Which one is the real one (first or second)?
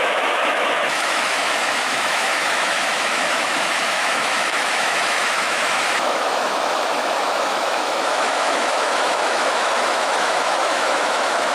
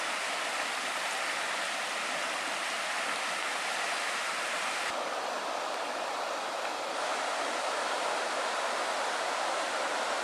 second